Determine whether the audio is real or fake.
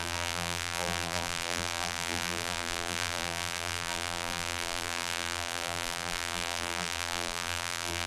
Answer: fake